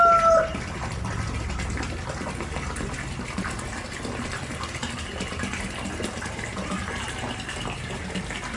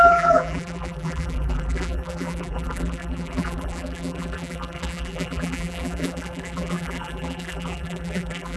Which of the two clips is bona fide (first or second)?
first